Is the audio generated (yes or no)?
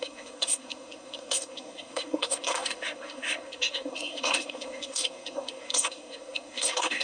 yes